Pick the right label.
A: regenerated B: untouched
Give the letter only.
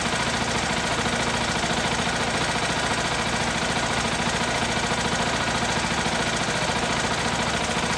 B